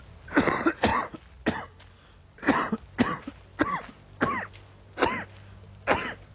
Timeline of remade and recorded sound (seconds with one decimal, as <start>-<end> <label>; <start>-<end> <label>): 0.0-6.3 recorded